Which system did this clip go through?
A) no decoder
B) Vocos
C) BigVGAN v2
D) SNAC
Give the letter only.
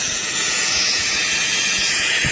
B